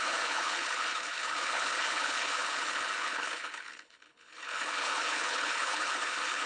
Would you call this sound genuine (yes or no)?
no